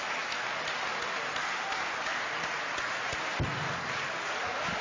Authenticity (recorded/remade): recorded